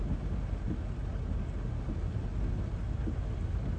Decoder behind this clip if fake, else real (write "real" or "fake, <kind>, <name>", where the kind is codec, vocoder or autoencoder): real